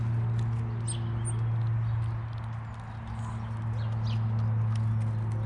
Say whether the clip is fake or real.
real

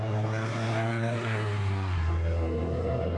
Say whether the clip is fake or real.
fake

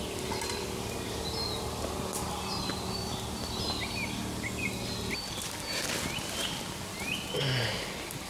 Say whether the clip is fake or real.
real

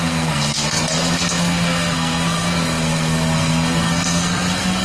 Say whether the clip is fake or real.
fake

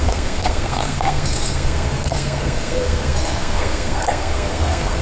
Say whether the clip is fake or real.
fake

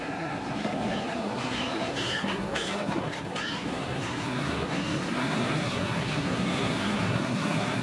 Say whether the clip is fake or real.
fake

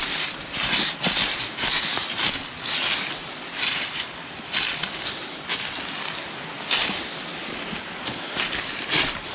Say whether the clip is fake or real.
real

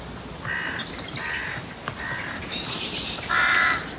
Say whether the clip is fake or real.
real